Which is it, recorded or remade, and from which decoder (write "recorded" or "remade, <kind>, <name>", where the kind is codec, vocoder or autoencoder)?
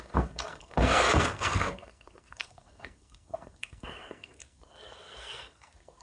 remade, codec, SNAC